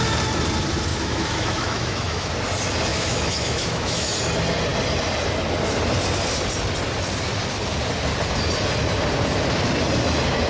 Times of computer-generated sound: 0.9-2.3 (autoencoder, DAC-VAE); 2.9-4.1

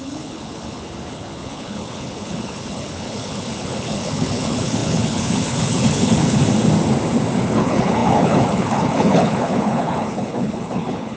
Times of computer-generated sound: 0.0-6.4 (codec, HILCodec); 7.4-11.2

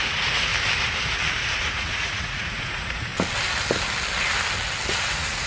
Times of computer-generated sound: 0.0-0.5 (vocoder, Vocos); 1.6-3.1; 4.9-5.5

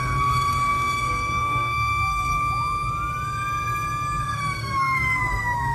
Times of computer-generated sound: 0.0-2.2 (codec, SNAC); 4.2-5.7

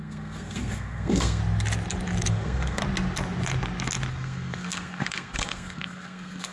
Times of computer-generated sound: 0.0-1.4 (codec, SNAC); 2.3-2.8; 4.1-6.5

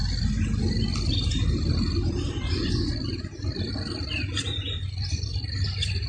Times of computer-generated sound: none